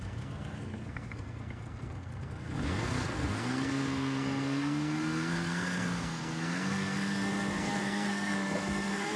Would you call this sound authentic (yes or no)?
no